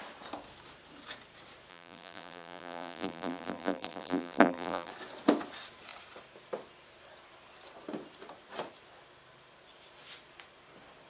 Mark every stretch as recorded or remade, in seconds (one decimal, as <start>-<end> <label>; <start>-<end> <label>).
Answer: 0.0-1.7 recorded; 1.7-4.9 remade; 4.9-11.1 recorded